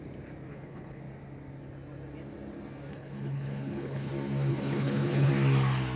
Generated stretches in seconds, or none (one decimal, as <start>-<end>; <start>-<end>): 0.5-1.0; 2.9-4.1; 4.5-5.3